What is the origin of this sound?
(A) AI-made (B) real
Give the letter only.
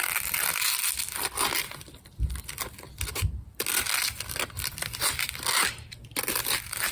B